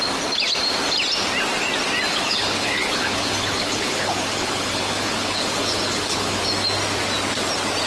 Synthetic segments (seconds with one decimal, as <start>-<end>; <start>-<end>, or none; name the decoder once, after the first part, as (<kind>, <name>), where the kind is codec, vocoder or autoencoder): 2.1-6.4 (codec, HILCodec)

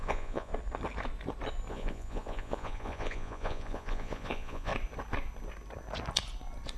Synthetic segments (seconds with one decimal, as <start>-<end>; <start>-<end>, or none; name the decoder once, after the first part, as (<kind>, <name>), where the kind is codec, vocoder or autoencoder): 0.0-0.5 (vocoder, Vocos); 1.7-4.7

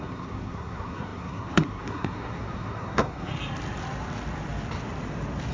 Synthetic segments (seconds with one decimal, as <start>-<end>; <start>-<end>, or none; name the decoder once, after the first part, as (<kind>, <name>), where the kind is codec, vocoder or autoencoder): 0.0-3.3 (codec, SNAC)